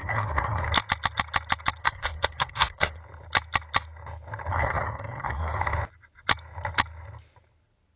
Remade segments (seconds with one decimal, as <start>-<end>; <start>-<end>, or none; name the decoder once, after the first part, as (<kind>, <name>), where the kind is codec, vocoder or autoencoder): 0.0-0.6 (codec, SNAC); 1.8-3.0; 4.5-5.6